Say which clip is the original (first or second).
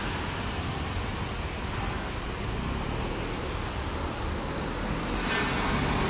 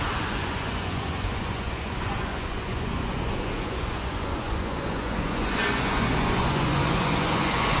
first